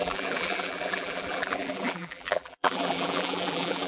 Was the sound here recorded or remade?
remade